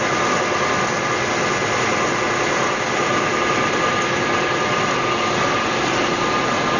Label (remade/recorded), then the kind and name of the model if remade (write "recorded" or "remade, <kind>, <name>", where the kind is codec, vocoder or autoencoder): recorded